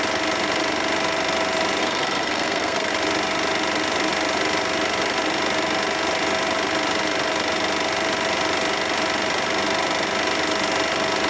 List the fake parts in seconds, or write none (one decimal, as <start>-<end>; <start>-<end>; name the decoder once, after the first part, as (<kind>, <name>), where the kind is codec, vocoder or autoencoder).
1.8-2.9 (codec, SNAC)